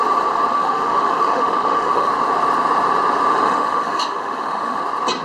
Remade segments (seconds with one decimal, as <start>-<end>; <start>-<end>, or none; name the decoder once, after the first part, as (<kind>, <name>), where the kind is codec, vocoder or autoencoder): 0.5-2.1 (autoencoder, DAC-VAE); 3.3-4.8